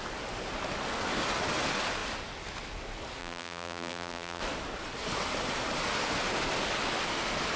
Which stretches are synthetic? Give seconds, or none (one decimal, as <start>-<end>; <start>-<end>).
3.2-4.4